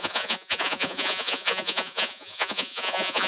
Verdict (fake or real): fake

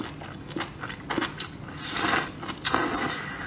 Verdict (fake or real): real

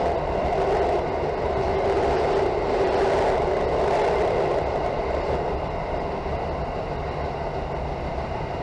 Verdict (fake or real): real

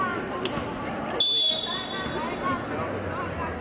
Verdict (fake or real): real